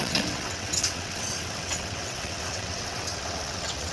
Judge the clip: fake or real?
fake